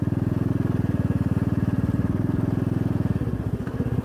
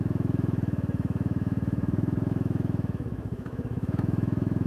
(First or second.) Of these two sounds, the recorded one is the first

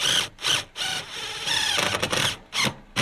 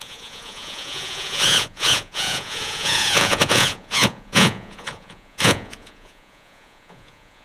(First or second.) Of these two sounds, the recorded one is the first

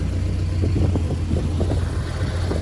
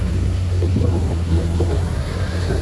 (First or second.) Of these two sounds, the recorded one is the first